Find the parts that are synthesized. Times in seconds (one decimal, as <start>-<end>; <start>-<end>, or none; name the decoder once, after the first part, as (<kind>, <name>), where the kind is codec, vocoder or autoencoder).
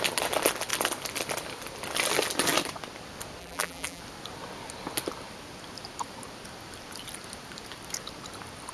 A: 3.4-4.0 (vocoder, BigVGAN v2)